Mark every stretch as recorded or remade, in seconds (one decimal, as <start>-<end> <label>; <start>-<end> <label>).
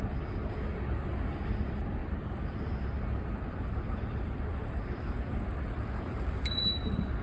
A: 0.0-2.0 recorded; 2.0-6.3 remade; 6.3-7.2 recorded